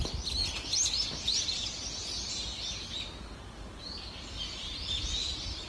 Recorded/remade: recorded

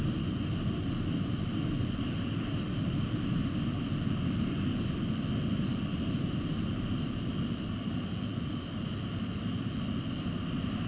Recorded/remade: recorded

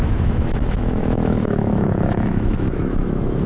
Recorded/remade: remade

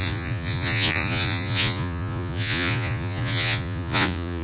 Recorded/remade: remade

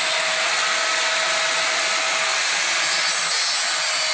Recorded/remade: recorded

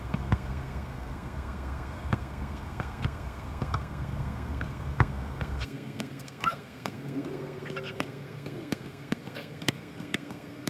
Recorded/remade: remade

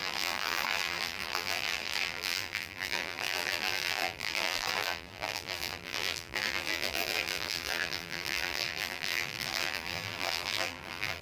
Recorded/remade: remade